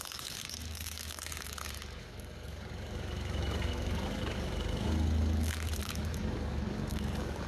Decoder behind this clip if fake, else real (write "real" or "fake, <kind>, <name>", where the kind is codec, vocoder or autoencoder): fake, codec, DAC